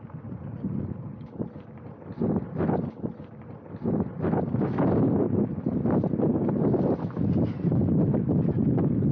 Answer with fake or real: real